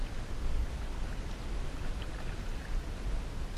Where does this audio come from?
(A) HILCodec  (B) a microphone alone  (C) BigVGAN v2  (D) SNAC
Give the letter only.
B